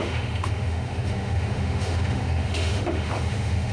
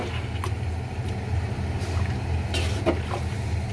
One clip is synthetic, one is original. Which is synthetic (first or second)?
first